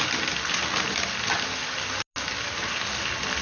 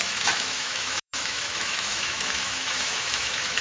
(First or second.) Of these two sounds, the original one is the first